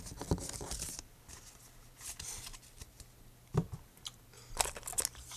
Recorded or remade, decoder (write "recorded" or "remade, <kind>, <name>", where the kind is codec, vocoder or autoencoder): recorded